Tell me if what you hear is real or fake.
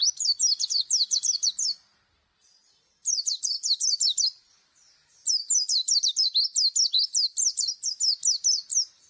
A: real